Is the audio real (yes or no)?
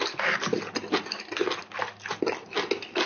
yes